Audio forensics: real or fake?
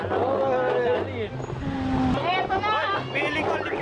real